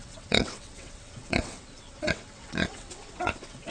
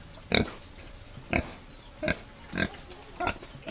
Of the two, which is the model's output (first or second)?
first